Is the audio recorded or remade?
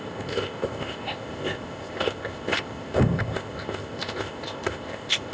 remade